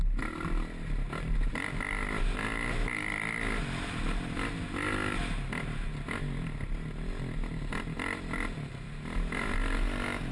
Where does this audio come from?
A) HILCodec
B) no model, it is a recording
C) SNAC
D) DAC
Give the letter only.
B